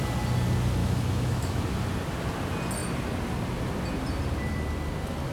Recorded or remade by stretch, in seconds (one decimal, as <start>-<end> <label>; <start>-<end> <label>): 0.0-0.8 recorded; 0.8-1.6 remade; 1.6-5.3 recorded